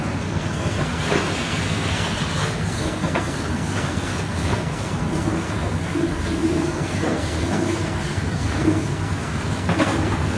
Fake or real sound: fake